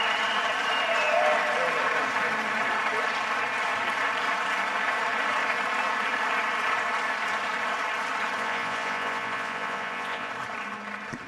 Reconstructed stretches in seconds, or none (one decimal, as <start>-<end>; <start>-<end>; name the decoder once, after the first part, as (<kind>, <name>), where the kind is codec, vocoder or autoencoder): 8.4-10.3 (vocoder, Vocos)